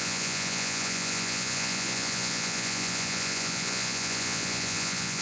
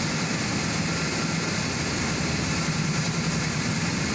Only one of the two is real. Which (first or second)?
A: second